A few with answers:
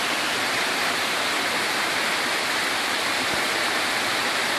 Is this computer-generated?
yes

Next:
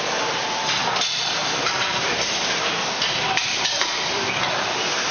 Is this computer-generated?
yes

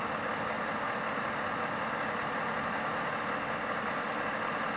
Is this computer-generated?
no